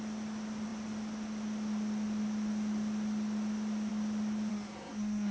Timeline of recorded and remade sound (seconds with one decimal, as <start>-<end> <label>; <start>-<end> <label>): 0.0-4.5 recorded; 4.5-5.3 remade